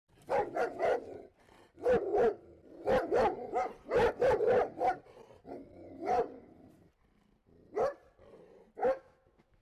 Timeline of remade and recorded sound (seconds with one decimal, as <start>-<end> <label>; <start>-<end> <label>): 0.0-8.8 recorded; 8.8-9.6 remade